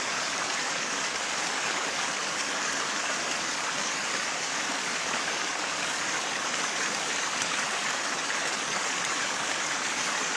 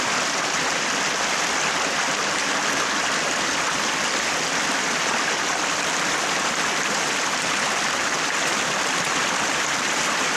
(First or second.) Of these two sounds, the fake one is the first